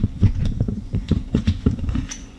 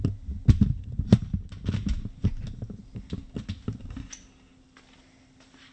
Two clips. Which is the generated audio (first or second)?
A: first